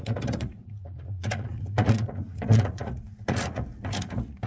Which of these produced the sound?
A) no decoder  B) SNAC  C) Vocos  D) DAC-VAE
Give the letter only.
C